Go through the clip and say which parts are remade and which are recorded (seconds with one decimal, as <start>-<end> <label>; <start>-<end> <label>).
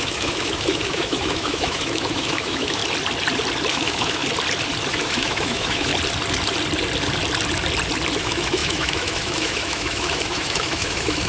0.0-2.8 remade; 2.8-3.7 recorded; 3.7-4.2 remade; 4.2-4.9 recorded; 4.9-5.9 remade; 5.9-8.1 recorded; 8.1-11.3 remade